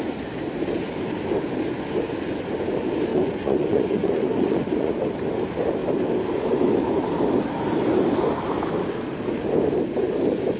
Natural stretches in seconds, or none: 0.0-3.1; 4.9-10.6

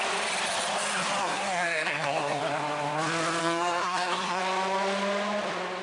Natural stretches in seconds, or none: 0.0-1.2; 2.4-3.4; 4.4-5.8

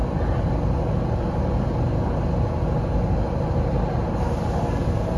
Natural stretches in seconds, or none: 0.0-5.2